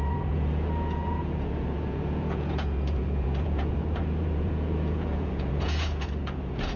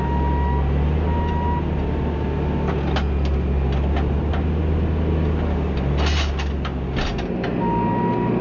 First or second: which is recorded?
second